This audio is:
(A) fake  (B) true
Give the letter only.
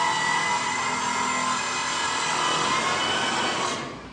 B